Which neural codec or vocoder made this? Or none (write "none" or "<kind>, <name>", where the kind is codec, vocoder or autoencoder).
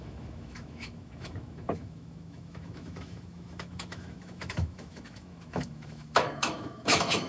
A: autoencoder, DAC-VAE